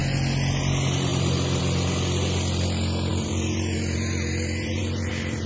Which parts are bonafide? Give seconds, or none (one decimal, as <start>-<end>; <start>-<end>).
0.0-3.1; 5.1-5.5